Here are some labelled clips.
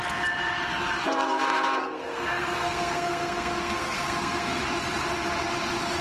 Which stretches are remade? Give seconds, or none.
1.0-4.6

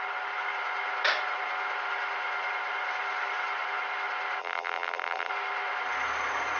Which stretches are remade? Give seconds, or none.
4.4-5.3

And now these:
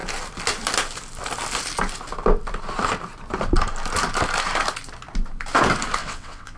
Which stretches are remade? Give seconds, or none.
6.0-6.6